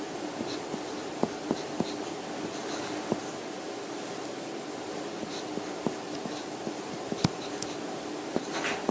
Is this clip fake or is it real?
real